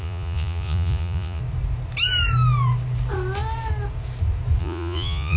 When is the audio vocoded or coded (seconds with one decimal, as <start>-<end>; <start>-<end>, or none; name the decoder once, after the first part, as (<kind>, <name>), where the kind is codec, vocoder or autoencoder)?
0.0-1.4 (vocoder, Vocos); 4.6-5.4